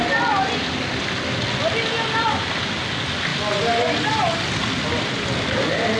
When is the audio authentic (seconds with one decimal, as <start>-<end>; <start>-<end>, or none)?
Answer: 0.0-6.0